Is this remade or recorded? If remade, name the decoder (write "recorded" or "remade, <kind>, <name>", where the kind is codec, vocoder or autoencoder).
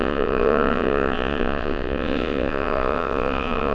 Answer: remade, vocoder, WaveNeXt